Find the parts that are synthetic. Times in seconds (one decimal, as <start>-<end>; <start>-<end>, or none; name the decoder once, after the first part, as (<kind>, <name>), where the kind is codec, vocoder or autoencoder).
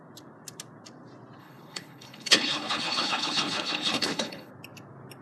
1.4-4.5 (codec, HILCodec)